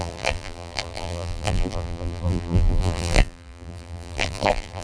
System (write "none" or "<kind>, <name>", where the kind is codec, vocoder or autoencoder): vocoder, BigVGAN v2